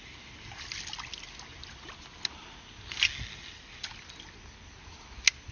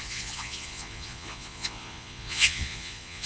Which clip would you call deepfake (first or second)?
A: second